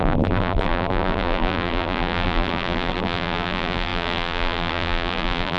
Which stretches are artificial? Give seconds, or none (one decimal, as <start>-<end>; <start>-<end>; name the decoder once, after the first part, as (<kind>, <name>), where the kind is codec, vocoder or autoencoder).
0.0-5.6 (vocoder, BigVGAN v2)